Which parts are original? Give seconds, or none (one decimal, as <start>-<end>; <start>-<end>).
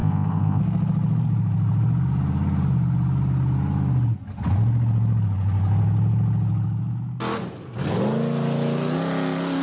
0.6-9.6